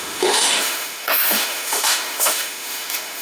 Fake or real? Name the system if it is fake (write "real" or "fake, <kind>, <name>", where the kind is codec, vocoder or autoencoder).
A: fake, autoencoder, DAC-VAE